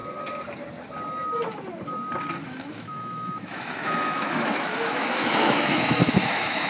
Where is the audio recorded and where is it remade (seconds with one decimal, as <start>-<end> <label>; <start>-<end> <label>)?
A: 0.0-2.4 recorded; 2.4-6.7 remade